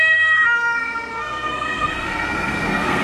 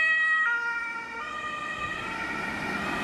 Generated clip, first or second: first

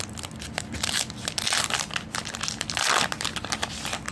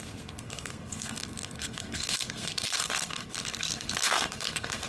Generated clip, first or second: second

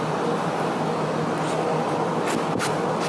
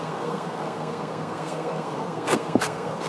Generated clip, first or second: second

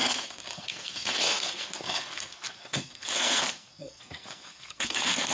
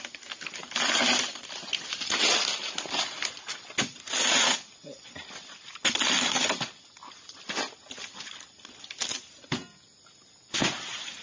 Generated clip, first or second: first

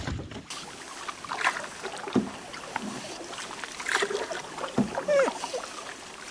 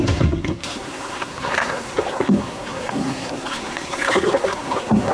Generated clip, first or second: second